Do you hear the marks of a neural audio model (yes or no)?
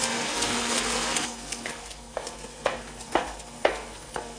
yes